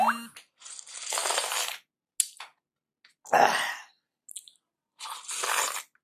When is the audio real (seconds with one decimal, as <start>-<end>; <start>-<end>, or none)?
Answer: 0.0-6.0